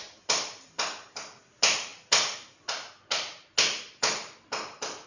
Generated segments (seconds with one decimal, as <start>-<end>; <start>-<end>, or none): none